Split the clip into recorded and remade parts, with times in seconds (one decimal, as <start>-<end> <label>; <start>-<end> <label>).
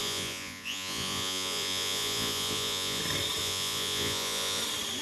0.0-3.0 remade; 3.0-3.4 recorded; 3.4-4.6 remade; 4.6-5.0 recorded